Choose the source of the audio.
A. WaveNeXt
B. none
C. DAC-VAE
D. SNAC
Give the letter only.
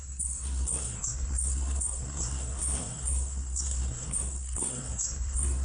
D